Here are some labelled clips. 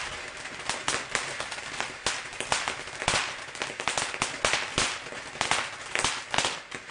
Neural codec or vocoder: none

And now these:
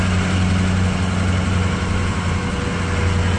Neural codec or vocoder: none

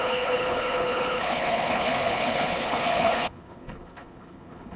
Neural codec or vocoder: codec, HILCodec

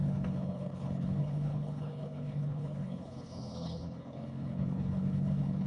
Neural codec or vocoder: codec, HILCodec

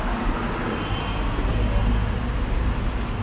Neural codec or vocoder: none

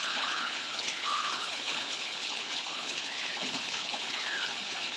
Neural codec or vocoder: codec, HILCodec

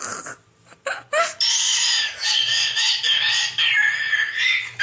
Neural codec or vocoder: none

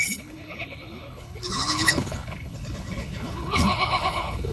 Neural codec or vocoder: codec, HILCodec